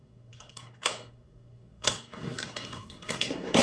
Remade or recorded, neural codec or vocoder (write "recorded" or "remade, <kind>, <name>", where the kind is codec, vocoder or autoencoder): remade, codec, SNAC